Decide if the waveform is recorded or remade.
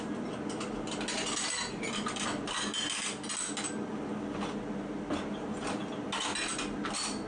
recorded